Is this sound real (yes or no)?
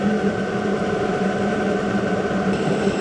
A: no